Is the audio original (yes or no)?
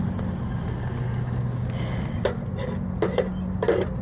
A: yes